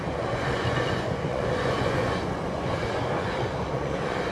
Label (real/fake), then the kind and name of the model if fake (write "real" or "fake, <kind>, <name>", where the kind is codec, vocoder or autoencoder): fake, vocoder, Vocos